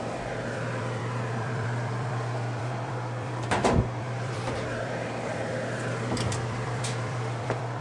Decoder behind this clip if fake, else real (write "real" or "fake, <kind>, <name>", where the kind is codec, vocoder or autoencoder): fake, vocoder, BigVGAN v2